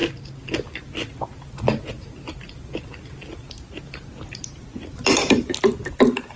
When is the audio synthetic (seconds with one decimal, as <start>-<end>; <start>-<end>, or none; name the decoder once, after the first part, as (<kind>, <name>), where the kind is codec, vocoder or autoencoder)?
none